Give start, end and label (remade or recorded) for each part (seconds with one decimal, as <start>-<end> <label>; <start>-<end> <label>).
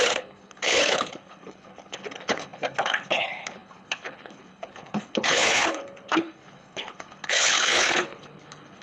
0.0-8.8 remade